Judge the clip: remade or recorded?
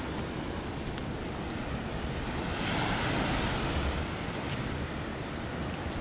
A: recorded